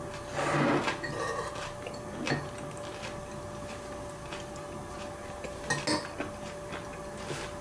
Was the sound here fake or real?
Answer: real